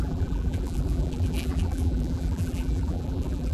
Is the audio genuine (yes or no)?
no